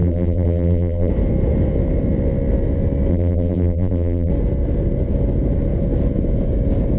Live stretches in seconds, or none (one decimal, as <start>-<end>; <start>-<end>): 1.1-3.1; 4.3-7.0